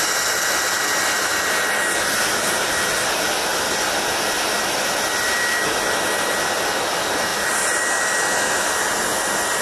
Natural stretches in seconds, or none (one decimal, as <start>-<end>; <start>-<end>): 0.0-9.6